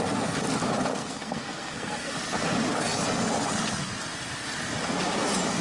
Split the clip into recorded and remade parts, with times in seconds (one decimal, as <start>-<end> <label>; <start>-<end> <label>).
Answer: 0.0-0.9 recorded; 0.9-2.1 remade; 2.1-5.6 recorded